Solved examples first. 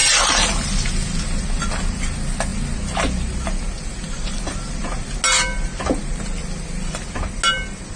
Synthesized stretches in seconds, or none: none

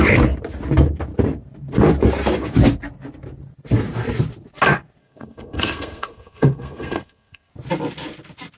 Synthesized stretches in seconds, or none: 5.0-7.5 (codec, SNAC)

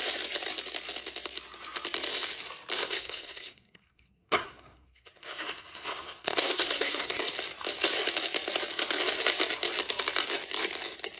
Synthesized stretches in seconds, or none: 2.8-7.2 (codec, SNAC)

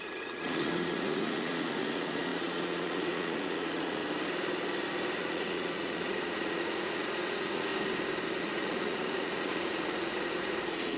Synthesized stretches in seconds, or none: 0.0-4.0 (vocoder, Vocos); 5.2-7.7; 8.4-11.0

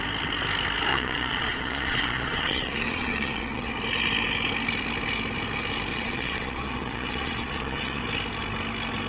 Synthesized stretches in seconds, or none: 0.9-3.7 (vocoder, Vocos); 5.9-8.0